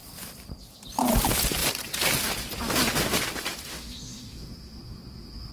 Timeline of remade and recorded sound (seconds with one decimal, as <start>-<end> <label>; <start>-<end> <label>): 0.0-3.7 recorded; 3.7-5.5 remade